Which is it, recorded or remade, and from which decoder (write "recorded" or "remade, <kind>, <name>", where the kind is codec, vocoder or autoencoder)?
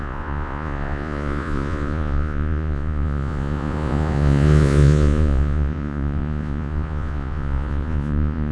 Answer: remade, vocoder, Vocos